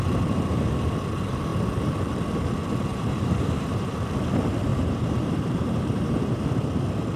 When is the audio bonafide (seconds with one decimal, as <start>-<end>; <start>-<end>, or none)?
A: 0.0-2.9; 4.0-4.7; 6.4-7.2